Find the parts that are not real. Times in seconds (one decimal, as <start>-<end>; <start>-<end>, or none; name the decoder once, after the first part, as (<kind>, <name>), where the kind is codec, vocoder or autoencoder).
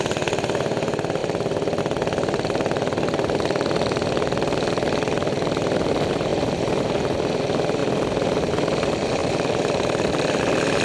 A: 1.2-1.8 (vocoder, BigVGAN v2); 7.8-8.4; 9.2-10.4